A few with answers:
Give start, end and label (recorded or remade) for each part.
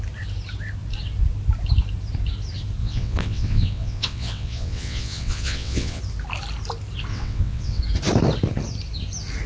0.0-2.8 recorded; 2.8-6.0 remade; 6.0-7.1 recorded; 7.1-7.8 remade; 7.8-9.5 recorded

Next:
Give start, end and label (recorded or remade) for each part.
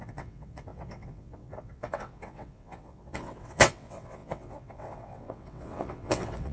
0.0-6.5 remade